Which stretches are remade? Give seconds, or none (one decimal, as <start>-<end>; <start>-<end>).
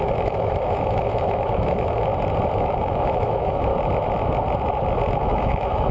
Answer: 0.0-2.1; 2.6-3.7; 5.2-5.9